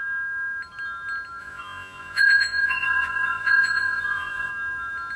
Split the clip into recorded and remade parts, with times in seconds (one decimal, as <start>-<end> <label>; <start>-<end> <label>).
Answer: 0.0-1.4 recorded; 1.4-4.5 remade; 4.5-5.2 recorded